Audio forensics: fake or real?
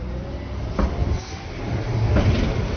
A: real